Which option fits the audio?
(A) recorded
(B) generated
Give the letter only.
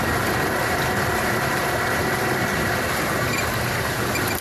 A